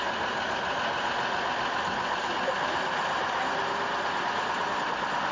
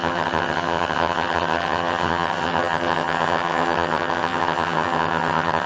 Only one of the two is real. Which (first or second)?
first